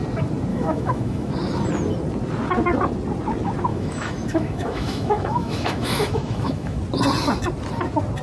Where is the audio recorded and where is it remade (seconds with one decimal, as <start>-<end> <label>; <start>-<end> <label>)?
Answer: 0.0-0.5 recorded; 0.5-1.3 remade; 1.3-3.7 recorded; 3.7-6.8 remade; 6.8-8.2 recorded